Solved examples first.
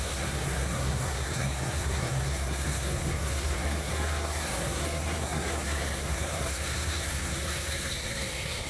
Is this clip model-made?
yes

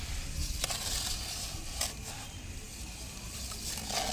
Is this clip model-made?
no